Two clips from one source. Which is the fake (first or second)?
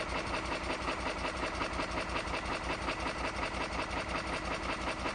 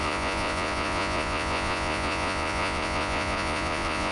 second